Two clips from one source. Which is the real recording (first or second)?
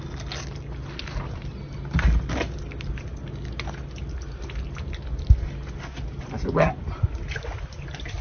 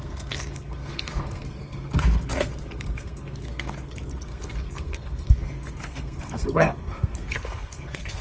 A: first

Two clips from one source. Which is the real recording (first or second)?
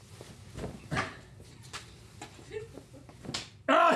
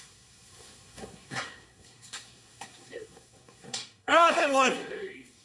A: first